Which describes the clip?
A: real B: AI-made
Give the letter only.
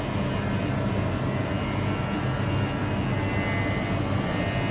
A